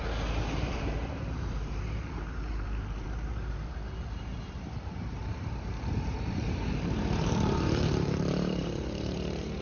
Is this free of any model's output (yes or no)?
no